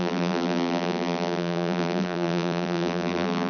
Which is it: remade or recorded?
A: remade